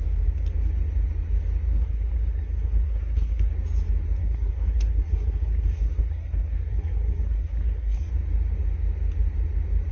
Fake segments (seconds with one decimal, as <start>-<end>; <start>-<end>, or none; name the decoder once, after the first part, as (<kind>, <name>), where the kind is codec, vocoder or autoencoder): 1.7-3.5 (codec, SNAC); 4.2-8.1